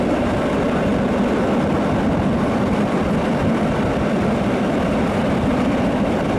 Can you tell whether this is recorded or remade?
recorded